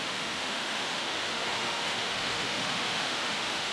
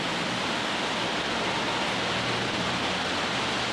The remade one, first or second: first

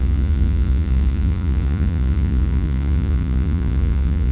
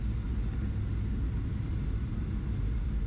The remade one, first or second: first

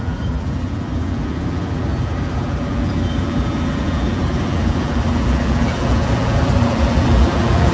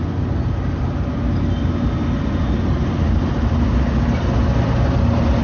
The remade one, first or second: first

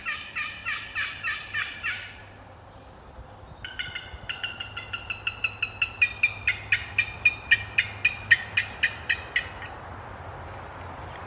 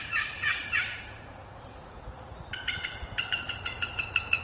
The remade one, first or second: second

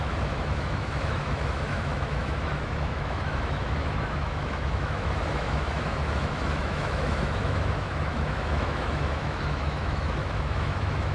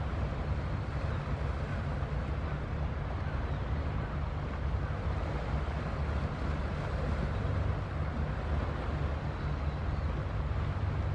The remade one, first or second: first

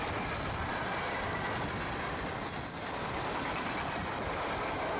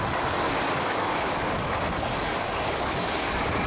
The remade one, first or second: second